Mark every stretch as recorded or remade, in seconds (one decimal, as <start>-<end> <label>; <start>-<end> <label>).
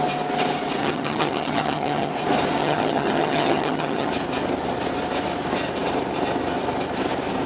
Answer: 0.0-0.8 recorded; 0.8-2.1 remade; 2.1-2.6 recorded; 2.6-4.1 remade; 4.1-7.5 recorded